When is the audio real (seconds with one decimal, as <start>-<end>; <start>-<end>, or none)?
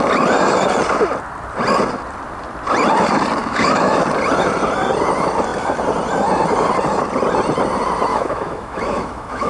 0.0-3.4; 4.0-8.1